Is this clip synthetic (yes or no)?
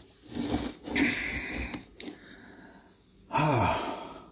no